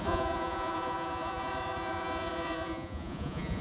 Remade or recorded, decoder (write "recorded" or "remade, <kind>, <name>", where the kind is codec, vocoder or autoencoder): remade, vocoder, Vocos